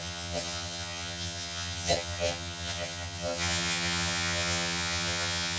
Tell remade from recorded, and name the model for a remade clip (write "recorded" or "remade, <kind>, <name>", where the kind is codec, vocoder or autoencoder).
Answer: remade, vocoder, HiFi-GAN